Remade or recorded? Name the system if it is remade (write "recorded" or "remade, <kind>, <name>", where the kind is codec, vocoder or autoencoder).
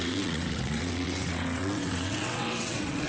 remade, vocoder, WaveNeXt